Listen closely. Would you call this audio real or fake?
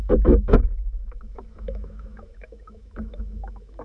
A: fake